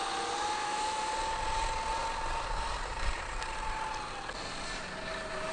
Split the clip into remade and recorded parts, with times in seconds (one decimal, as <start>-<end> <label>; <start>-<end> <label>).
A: 0.0-0.6 recorded; 0.6-1.1 remade; 1.1-5.5 recorded